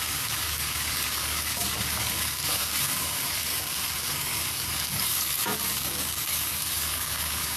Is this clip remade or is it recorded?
remade